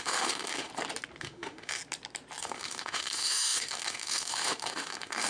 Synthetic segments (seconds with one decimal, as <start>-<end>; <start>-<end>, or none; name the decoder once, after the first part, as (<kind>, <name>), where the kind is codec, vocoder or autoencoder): 0.0-0.7 (autoencoder, DAC-VAE); 1.2-1.8; 2.4-5.3